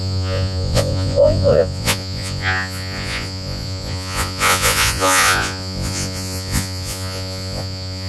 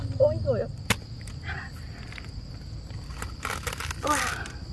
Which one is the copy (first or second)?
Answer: first